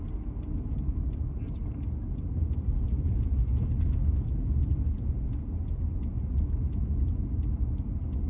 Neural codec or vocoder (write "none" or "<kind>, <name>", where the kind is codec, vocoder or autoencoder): none